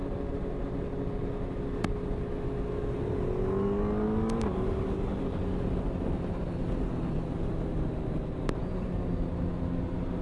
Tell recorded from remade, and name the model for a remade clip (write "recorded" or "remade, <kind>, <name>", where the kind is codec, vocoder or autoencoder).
recorded